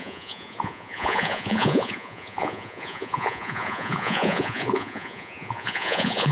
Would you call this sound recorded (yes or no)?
no